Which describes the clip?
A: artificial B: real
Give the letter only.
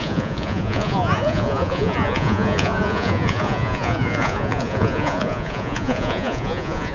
A